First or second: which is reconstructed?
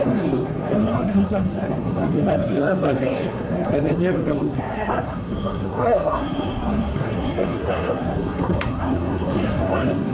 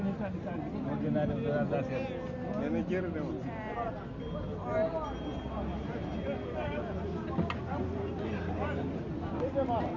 first